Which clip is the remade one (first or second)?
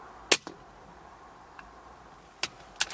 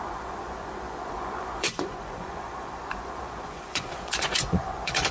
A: second